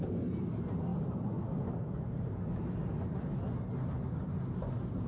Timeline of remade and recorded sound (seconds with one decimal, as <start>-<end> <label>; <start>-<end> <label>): 0.0-5.1 recorded